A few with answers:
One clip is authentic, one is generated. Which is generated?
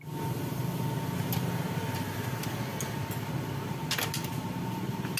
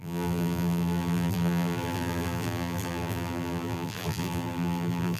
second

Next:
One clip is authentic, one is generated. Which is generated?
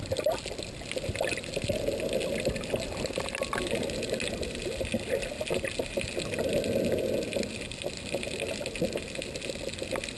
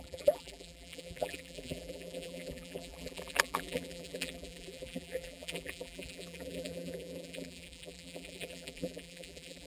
second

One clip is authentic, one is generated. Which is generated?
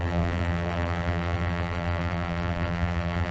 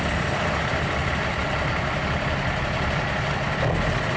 first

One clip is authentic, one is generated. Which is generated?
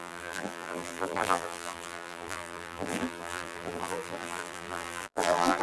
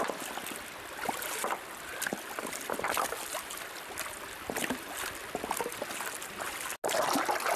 first